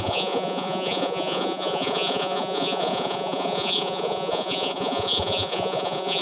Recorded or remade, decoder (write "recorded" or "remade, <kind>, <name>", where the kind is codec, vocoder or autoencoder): remade, vocoder, Vocos